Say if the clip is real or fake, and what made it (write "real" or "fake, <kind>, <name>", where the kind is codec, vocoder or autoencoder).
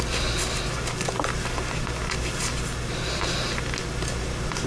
real